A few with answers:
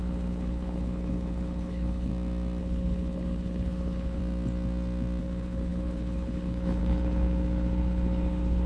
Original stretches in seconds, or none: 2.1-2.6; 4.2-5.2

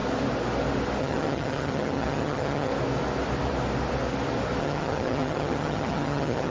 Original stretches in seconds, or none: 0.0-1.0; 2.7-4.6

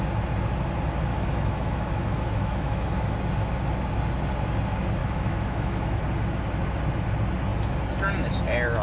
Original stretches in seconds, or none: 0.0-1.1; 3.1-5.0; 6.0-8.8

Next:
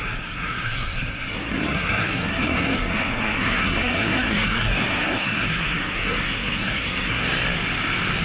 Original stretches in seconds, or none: 7.2-8.2